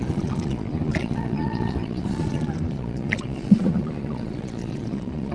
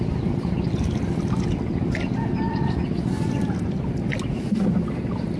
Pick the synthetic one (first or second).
first